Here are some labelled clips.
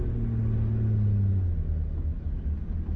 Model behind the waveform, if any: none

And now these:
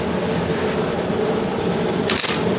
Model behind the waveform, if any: none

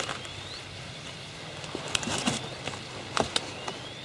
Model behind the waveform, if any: none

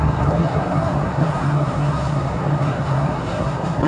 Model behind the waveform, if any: codec, SNAC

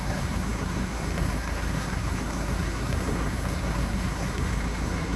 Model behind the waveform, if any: codec, SNAC